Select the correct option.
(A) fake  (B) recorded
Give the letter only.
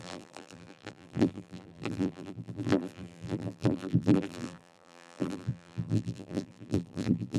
A